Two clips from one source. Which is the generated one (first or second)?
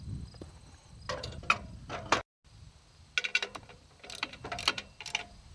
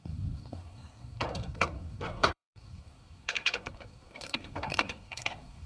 second